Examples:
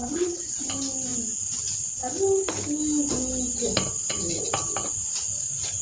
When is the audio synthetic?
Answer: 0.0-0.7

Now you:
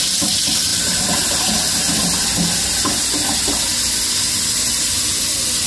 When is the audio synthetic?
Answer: none

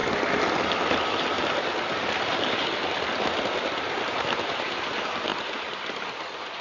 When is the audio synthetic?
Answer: 4.0-5.3

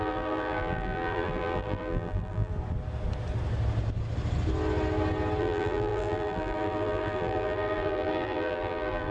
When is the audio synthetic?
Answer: 0.0-2.5; 5.4-9.1

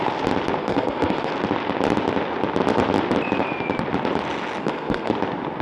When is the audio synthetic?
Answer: 0.6-1.3; 4.6-5.1

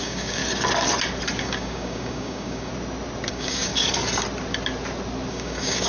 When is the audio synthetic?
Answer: 0.0-0.4; 1.4-2.7; 3.3-3.7; 5.3-5.9

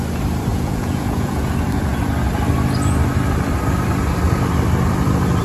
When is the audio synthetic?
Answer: 0.5-1.5